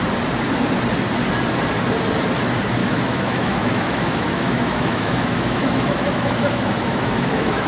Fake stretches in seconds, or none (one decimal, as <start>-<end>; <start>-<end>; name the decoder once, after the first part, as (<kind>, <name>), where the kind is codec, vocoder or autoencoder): 2.8-7.7 (autoencoder, DAC-VAE)